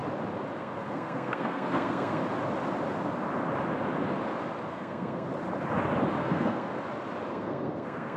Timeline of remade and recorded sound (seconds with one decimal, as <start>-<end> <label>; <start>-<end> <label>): 0.0-0.6 recorded; 0.6-2.2 remade; 2.2-4.7 recorded; 4.7-5.3 remade; 5.3-6.2 recorded; 6.2-6.7 remade; 6.7-7.3 recorded; 7.3-8.2 remade